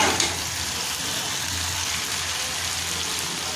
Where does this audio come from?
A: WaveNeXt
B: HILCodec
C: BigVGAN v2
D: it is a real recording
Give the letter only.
C